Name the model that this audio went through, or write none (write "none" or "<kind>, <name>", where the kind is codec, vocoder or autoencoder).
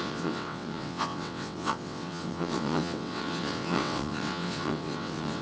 vocoder, WaveNeXt